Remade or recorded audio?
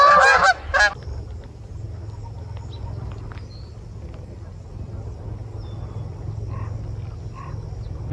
recorded